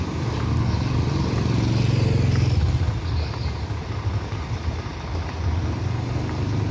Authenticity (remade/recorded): recorded